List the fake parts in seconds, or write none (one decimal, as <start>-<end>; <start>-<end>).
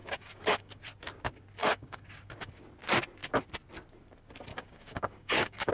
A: 0.0-0.8; 1.6-2.5; 4.5-5.7